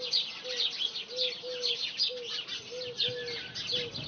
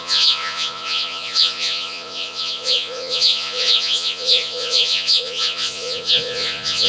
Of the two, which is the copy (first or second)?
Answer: second